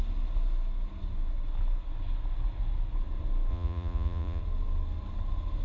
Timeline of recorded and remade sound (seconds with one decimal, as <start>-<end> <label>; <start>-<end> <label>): 0.0-3.5 recorded; 3.5-4.4 remade; 4.4-5.6 recorded